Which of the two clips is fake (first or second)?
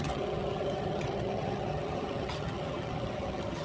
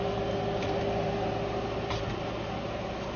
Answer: first